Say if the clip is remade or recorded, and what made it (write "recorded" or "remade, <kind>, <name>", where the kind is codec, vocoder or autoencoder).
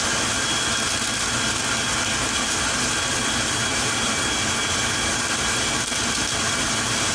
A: recorded